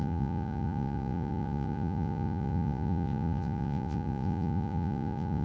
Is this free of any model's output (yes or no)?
no